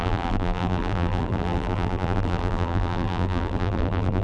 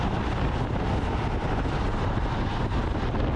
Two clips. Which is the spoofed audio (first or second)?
first